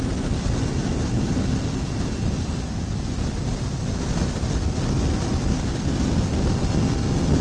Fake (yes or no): no